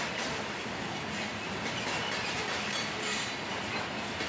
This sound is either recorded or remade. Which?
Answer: recorded